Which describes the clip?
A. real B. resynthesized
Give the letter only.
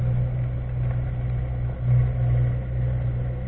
A